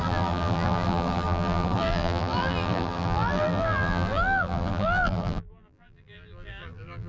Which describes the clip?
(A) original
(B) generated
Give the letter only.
B